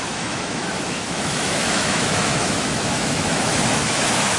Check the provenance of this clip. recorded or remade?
remade